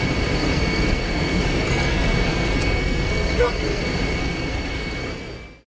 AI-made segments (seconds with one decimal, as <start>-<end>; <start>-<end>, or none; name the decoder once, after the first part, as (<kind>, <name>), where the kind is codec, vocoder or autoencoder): 0.4-3.8 (codec, SNAC); 4.2-5.1